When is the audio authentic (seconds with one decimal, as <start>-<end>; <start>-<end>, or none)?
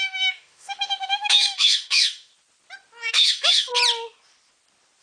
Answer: 2.3-3.1; 3.7-5.0